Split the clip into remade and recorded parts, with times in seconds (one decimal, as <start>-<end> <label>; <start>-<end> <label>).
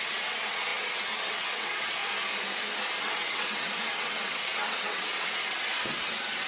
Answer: 0.0-2.0 remade; 2.0-3.0 recorded; 3.0-6.5 remade